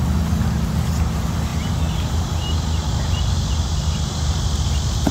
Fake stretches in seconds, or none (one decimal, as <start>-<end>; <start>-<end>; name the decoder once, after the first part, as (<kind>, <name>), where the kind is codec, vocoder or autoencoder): none